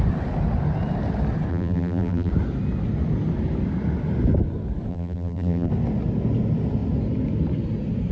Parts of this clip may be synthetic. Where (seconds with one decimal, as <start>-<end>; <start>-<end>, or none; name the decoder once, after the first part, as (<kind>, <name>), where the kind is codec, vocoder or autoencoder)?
1.5-2.3 (vocoder, BigVGAN v2); 4.9-5.7